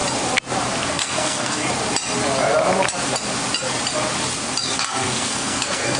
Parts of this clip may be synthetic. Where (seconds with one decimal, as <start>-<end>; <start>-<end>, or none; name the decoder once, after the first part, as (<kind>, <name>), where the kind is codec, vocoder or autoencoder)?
0.9-1.6 (codec, SNAC); 4.6-6.0